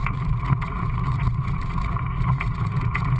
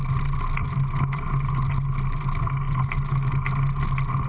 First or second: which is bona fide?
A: second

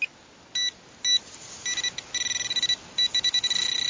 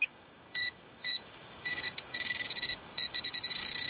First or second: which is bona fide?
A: first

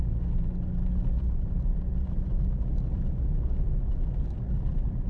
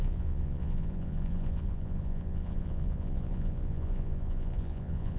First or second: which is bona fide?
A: first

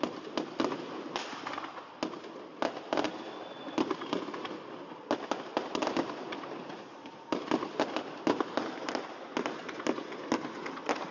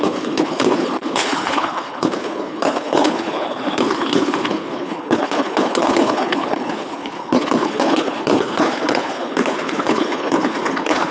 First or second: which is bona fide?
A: first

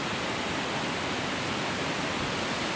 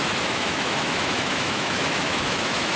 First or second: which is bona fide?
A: first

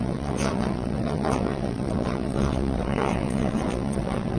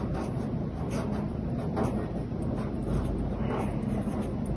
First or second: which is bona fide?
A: second